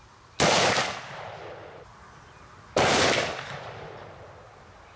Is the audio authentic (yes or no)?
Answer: yes